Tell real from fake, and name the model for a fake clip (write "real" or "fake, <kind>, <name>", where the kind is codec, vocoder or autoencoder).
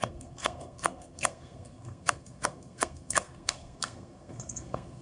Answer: fake, codec, SNAC